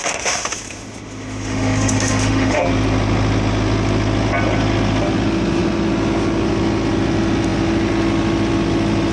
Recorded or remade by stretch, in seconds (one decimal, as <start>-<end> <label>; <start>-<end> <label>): 0.0-2.6 remade; 2.6-9.1 recorded